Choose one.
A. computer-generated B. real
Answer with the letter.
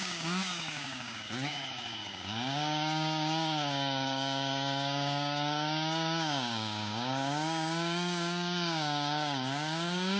A